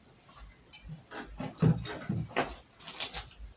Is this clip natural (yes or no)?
yes